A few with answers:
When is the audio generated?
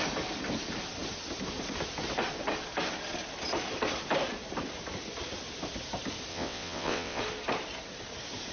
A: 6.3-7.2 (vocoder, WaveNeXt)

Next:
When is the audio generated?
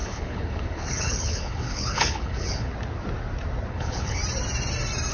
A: 0.0-2.7 (codec, HILCodec); 3.7-4.2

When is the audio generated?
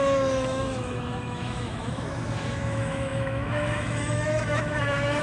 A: 0.0-5.2 (autoencoder, DAC-VAE)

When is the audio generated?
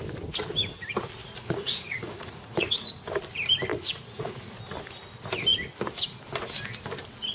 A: 1.2-2.9 (vocoder, Vocos); 3.7-4.5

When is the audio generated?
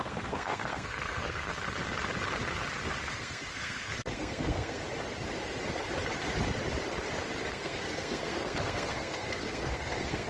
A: 0.0-1.5 (codec, SNAC); 3.1-4.8; 7.5-10.3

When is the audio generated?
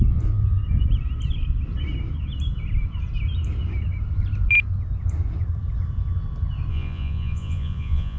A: 6.7-8.2 (vocoder, Vocos)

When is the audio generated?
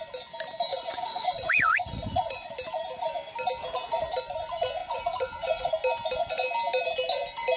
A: 0.7-2.5 (vocoder, Vocos); 4.8-5.7